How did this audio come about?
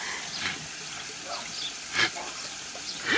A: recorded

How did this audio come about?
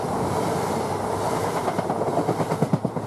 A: recorded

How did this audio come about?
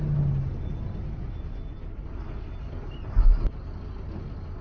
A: recorded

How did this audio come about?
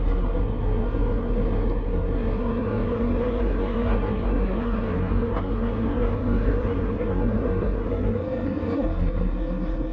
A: remade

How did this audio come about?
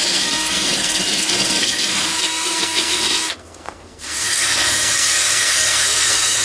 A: remade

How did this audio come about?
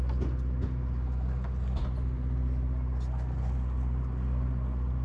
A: recorded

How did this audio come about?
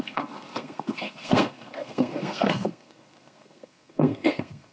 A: remade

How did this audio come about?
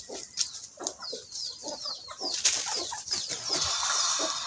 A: recorded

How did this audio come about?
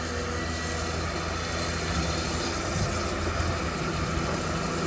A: recorded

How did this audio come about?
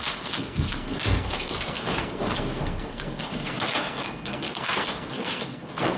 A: remade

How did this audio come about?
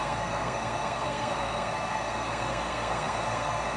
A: remade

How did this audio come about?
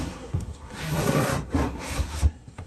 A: remade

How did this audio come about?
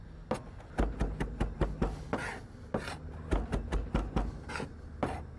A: recorded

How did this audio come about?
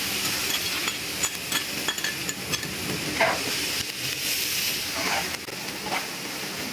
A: recorded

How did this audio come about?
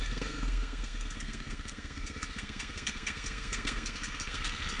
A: remade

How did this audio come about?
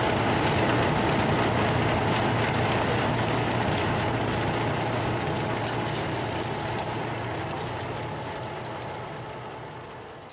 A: recorded